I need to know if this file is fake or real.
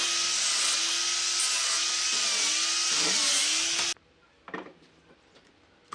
real